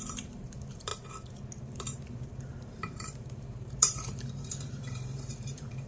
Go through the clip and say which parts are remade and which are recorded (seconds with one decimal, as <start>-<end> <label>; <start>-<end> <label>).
0.0-0.9 remade; 0.9-1.6 recorded; 1.6-5.9 remade